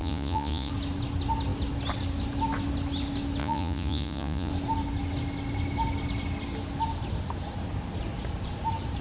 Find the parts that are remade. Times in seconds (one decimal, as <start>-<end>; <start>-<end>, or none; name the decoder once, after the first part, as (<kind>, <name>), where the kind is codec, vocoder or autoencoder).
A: 0.0-0.7 (vocoder, Vocos); 3.4-4.5